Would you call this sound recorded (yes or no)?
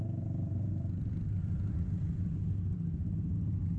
no